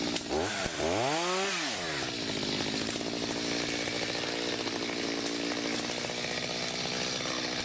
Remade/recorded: recorded